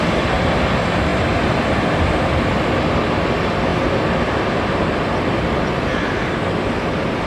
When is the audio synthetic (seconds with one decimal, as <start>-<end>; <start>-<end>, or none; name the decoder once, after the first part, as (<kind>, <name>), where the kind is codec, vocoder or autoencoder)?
none